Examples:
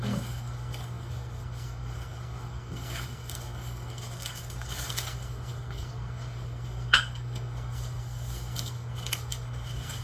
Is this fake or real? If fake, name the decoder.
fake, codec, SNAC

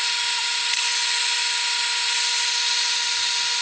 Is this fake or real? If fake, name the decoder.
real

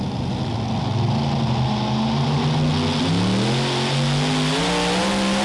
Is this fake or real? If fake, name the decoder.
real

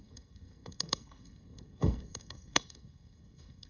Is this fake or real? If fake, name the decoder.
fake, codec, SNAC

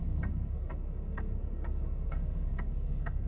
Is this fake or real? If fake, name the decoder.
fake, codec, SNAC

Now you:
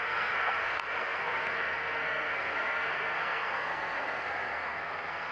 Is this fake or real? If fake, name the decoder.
fake, codec, SNAC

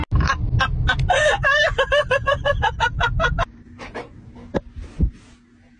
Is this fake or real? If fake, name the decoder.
real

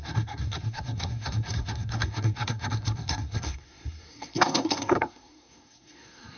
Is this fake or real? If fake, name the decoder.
fake, codec, SNAC